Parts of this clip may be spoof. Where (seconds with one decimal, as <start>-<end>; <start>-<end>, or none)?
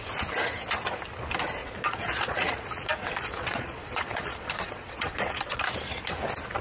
1.6-5.6